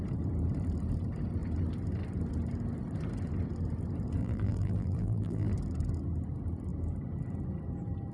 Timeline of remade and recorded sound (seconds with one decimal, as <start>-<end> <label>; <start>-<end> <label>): 0.0-4.2 recorded; 4.2-5.5 remade; 5.5-8.1 recorded